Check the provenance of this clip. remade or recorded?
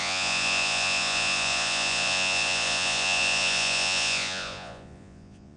remade